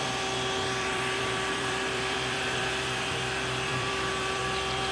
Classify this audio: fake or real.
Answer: fake